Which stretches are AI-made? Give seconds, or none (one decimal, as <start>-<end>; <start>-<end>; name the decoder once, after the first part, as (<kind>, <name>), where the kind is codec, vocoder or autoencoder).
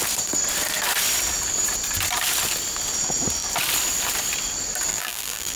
4.9-5.6 (vocoder, BigVGAN v2)